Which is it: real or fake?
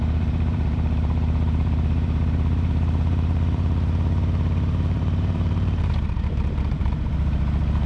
fake